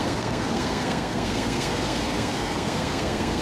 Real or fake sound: fake